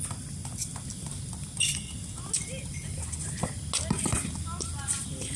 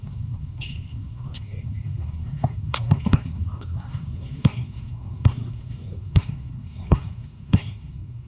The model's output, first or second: second